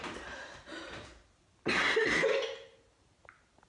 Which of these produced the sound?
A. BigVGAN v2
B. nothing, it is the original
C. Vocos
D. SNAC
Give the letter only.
A